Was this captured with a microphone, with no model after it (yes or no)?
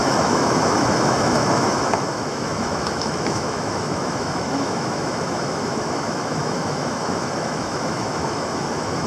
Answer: no